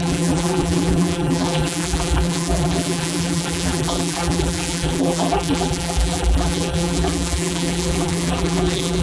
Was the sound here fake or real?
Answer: fake